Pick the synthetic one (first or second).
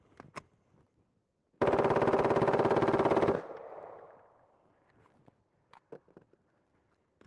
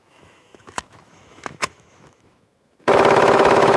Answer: second